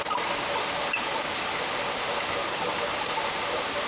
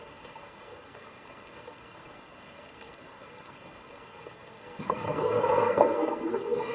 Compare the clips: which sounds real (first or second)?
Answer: first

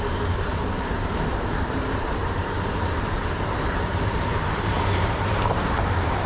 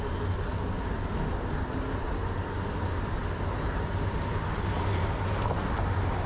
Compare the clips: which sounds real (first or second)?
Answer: second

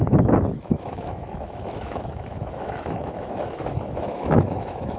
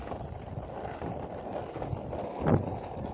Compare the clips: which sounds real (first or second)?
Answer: second